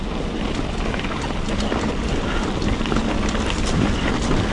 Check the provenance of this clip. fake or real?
real